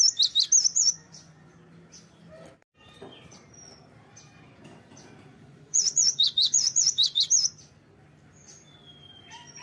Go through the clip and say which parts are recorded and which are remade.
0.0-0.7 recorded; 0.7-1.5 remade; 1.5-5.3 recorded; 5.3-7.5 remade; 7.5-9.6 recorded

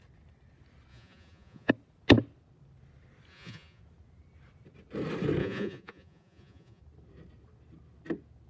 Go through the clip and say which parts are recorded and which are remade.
0.0-0.9 recorded; 0.9-1.7 remade; 1.7-3.3 recorded; 3.3-3.8 remade; 3.8-5.4 recorded; 5.4-6.8 remade; 6.8-8.5 recorded

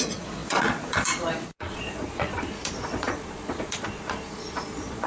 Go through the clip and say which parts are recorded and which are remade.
0.0-5.1 remade